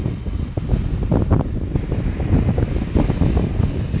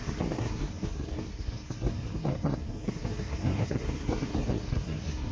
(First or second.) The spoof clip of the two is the second